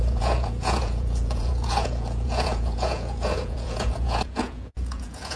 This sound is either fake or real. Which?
fake